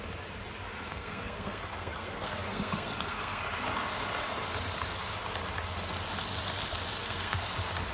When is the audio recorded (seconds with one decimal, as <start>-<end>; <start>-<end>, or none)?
0.0-0.8; 3.4-7.0; 7.5-7.9